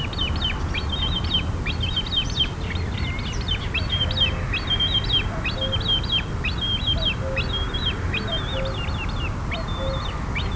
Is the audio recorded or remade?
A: recorded